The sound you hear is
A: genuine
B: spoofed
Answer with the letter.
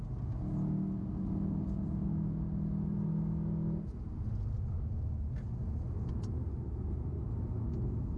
A